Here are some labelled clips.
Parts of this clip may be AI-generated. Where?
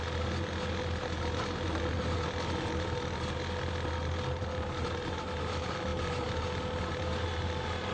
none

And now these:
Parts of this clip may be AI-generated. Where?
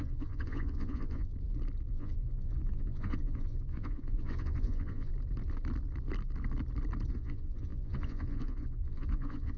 0.0-1.3 (vocoder, Vocos); 1.9-5.1; 7.1-9.6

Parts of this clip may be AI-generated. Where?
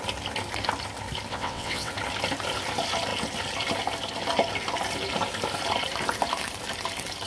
1.3-1.9 (vocoder, WaveNeXt)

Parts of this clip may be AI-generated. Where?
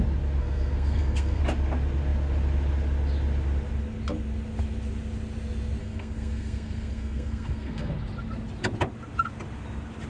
0.4-1.4 (codec, SNAC); 5.8-7.9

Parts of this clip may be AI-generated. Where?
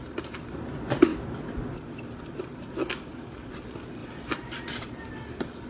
2.8-3.5 (codec, DAC)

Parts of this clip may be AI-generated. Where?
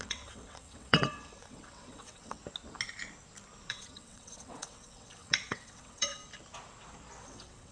0.0-2.4 (vocoder, WaveNeXt); 3.7-6.2; 7.2-7.7